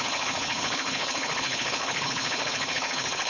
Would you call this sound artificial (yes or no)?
yes